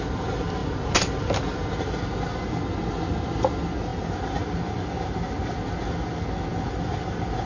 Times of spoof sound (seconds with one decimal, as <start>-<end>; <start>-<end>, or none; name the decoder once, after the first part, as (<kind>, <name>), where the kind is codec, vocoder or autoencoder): none